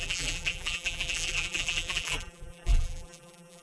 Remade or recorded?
remade